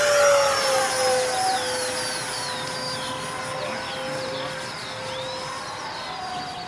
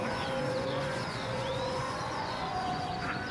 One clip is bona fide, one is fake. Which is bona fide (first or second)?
first